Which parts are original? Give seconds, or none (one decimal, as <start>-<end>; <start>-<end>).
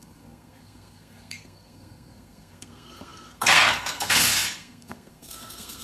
none